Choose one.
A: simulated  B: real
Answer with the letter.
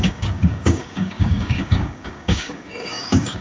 A